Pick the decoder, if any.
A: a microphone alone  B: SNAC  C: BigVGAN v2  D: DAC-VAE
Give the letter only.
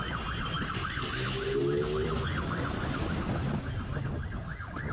A